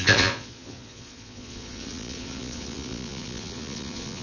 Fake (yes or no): yes